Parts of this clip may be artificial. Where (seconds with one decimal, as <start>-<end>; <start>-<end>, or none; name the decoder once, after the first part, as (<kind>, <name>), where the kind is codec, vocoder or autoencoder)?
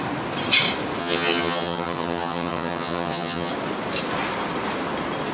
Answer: 1.0-3.5 (vocoder, HiFi-GAN)